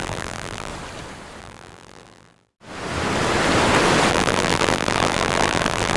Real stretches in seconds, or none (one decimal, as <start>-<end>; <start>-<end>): 0.7-1.4; 2.5-4.1

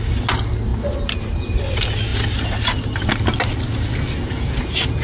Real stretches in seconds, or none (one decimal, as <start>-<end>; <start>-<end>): 0.0-5.0

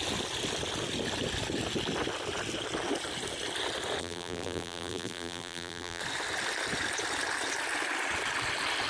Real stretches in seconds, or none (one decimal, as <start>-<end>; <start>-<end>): 0.0-4.0; 6.0-8.9

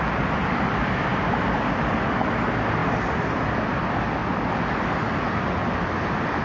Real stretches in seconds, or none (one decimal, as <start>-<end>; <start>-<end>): 0.0-0.4; 1.7-4.2; 4.7-6.4

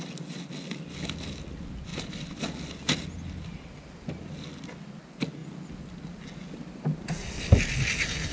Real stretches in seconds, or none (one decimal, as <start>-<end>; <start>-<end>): 0.0-8.3

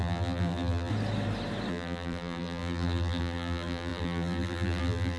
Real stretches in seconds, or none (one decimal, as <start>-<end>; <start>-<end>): 0.9-1.7